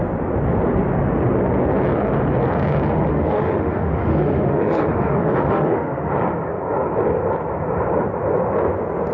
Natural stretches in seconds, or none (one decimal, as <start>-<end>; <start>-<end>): 0.0-3.1; 6.1-9.1